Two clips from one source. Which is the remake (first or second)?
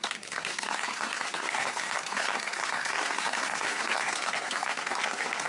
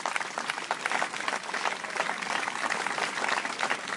first